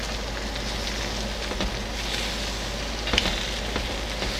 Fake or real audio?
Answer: real